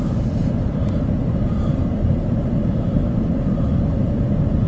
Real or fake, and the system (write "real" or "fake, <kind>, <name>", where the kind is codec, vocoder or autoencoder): fake, vocoder, BigVGAN v2